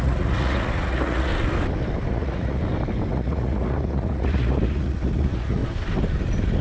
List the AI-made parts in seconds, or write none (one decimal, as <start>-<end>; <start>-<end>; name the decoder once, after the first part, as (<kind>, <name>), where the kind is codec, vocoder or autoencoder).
0.0-1.3 (vocoder, Vocos); 2.1-2.6; 3.1-5.6